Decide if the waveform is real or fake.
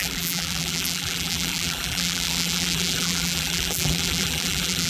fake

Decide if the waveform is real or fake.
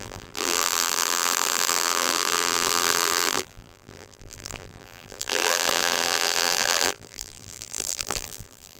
fake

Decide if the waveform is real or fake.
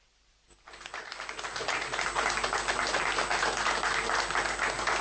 real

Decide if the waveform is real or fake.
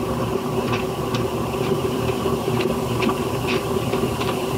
fake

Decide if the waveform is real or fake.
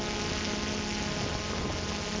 real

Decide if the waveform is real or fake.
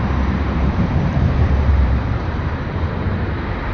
fake